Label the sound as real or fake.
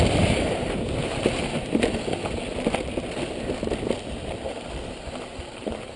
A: real